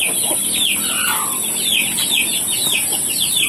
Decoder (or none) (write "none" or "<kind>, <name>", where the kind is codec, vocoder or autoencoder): none